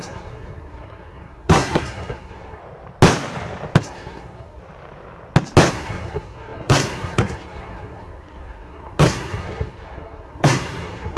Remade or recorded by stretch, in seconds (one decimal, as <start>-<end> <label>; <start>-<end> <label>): 0.0-2.6 remade; 2.6-3.8 recorded; 3.8-4.6 remade; 4.6-5.7 recorded; 5.7-11.2 remade